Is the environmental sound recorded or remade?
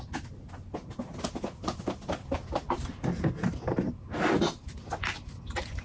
recorded